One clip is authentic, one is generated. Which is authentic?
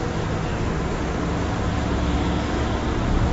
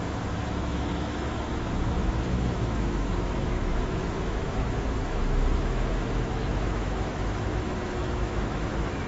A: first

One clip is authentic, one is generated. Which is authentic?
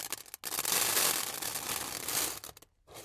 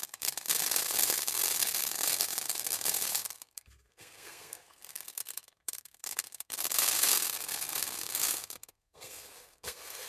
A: first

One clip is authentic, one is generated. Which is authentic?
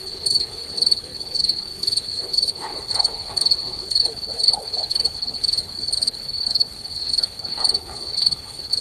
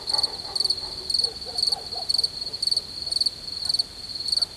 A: second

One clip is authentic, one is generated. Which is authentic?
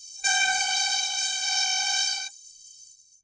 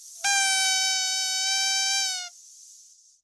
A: second